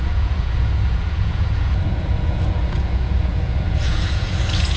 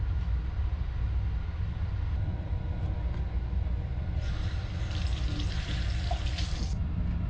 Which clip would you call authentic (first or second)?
second